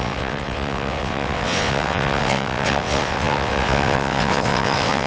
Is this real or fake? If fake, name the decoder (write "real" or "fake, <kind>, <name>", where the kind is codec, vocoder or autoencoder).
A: fake, vocoder, WaveNeXt